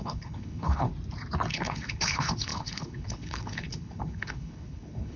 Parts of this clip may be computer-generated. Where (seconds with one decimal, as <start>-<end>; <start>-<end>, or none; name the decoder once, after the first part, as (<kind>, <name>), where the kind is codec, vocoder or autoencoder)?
0.0-0.9 (codec, HILCodec); 1.5-5.2